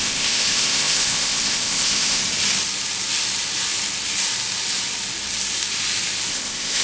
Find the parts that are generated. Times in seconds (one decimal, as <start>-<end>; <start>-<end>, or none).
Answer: 0.0-2.2; 6.3-6.8